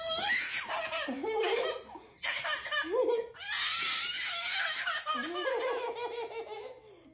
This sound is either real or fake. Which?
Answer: real